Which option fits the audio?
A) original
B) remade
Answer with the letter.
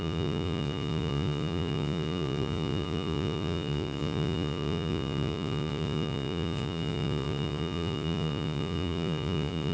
B